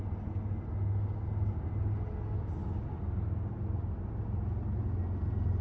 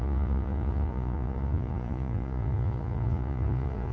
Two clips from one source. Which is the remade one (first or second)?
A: second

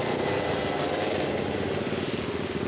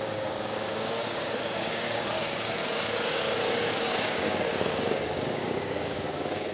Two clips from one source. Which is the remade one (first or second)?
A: second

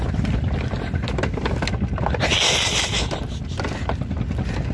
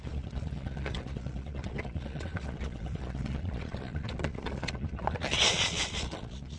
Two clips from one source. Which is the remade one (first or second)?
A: second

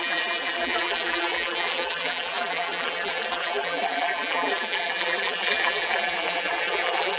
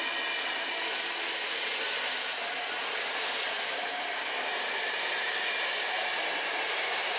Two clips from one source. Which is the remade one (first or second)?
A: first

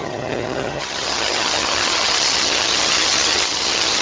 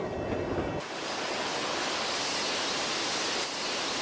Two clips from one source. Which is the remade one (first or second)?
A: first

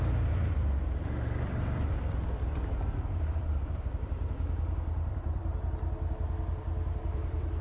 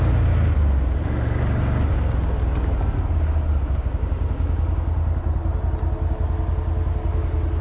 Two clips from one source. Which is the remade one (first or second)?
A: first